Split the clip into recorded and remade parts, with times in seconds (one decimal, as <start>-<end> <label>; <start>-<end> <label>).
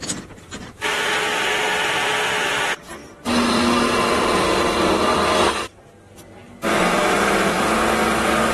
0.0-8.5 remade